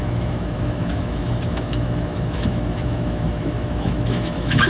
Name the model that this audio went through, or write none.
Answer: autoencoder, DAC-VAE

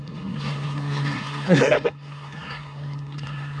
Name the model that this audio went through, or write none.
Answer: codec, SNAC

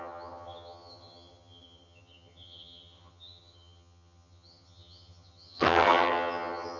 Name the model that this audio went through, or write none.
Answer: vocoder, HiFi-GAN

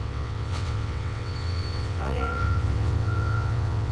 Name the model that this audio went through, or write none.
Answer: vocoder, WaveNeXt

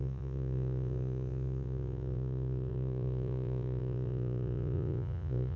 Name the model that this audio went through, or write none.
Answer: vocoder, Vocos